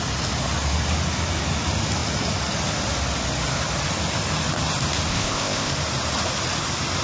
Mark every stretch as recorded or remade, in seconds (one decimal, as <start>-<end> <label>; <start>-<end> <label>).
0.0-5.1 recorded; 5.1-5.7 remade; 5.7-7.0 recorded